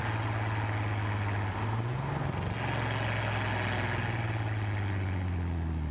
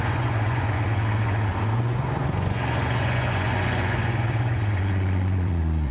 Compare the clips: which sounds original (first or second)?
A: first